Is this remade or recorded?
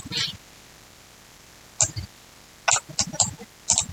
recorded